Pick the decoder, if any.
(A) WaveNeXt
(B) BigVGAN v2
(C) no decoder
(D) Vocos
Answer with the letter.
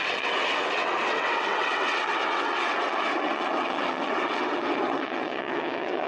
A